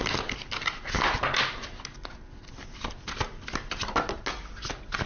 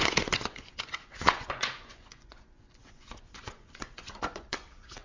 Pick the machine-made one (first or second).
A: second